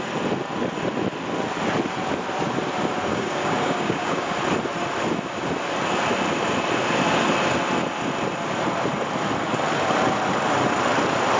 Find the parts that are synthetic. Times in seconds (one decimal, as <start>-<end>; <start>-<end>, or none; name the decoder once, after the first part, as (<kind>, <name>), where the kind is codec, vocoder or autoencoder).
3.1-4.3 (codec, DAC)